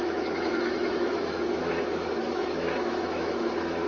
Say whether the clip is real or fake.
fake